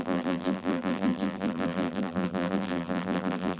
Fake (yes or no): yes